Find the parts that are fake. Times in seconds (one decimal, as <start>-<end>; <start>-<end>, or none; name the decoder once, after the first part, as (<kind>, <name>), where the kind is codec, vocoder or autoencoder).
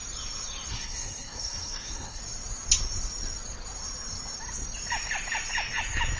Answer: 0.7-2.2 (codec, SNAC)